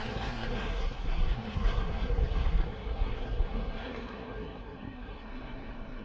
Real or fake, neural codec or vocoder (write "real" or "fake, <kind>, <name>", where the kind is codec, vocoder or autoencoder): fake, codec, SNAC